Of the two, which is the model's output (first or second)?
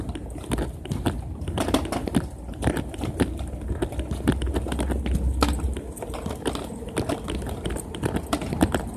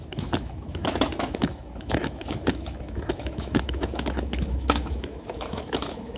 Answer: second